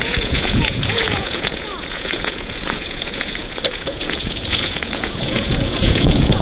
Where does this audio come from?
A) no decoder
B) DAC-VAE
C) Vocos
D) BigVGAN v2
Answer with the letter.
C